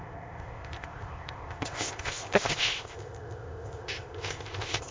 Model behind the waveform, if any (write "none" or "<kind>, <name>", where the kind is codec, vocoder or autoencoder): codec, ZipCodec